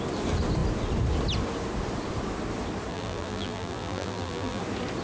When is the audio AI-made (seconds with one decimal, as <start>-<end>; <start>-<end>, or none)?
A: 2.9-4.6